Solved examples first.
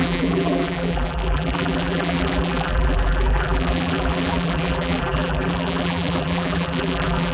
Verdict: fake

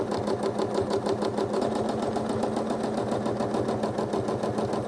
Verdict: real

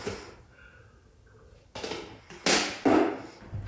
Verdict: real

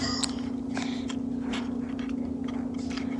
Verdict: real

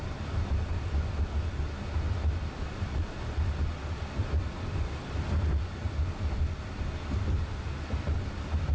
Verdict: real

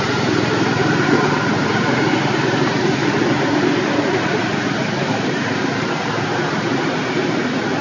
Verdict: fake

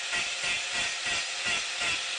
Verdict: fake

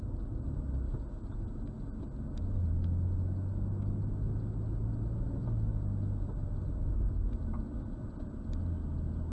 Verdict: real